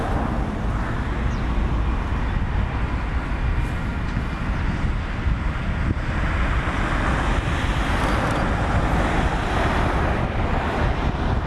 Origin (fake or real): real